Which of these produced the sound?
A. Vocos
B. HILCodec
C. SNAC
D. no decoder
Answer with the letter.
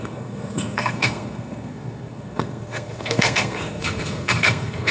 C